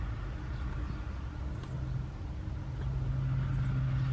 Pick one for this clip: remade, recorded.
recorded